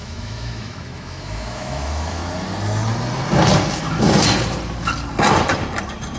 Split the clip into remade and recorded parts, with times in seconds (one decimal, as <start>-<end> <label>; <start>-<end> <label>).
0.0-2.2 remade; 2.2-6.2 recorded